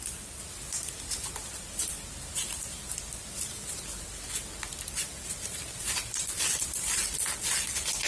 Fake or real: real